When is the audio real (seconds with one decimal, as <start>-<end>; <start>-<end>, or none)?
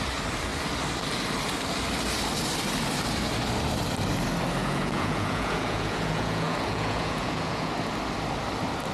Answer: 0.0-4.6; 7.7-8.9